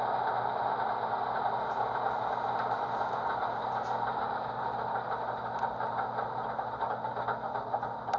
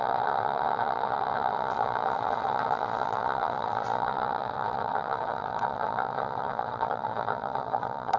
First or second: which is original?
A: first